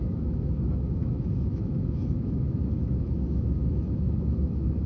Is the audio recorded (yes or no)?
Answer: no